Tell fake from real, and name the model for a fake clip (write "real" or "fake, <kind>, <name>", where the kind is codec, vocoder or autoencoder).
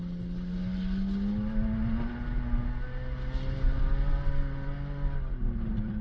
real